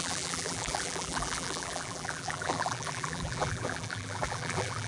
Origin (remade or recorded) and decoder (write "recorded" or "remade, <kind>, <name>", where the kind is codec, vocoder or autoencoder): remade, vocoder, BigVGAN v2